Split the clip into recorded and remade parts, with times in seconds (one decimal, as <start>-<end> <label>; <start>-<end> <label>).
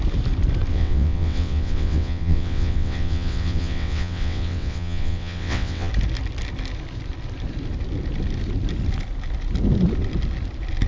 0.0-0.7 recorded; 0.7-5.9 remade; 5.9-10.9 recorded